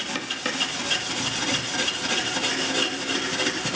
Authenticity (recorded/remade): recorded